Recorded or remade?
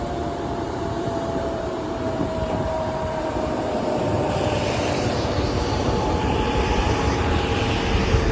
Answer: remade